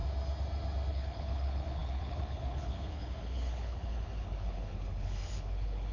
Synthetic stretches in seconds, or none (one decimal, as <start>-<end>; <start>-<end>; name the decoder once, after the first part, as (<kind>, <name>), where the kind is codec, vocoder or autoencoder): 0.9-5.9 (codec, HILCodec)